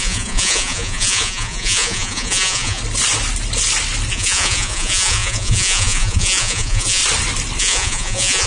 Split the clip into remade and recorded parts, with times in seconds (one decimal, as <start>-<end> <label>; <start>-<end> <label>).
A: 0.0-2.8 remade; 2.8-4.1 recorded; 4.1-7.0 remade; 7.0-7.6 recorded; 7.6-8.5 remade